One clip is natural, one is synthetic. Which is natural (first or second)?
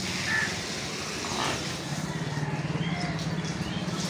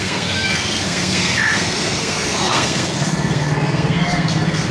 first